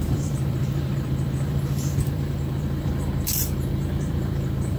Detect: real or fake fake